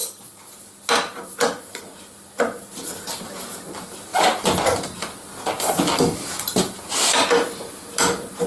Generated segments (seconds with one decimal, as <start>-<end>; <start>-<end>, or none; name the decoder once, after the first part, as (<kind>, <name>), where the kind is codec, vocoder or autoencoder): none